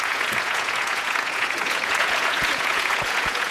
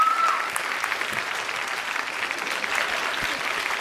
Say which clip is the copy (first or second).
first